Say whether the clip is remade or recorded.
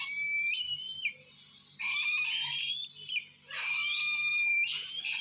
recorded